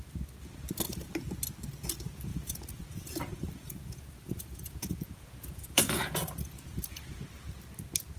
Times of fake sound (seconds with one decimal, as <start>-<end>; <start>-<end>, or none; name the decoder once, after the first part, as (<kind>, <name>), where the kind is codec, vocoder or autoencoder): 2.3-7.2 (vocoder, Vocos)